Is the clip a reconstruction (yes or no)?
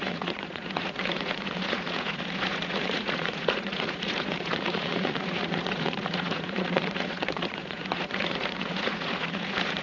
yes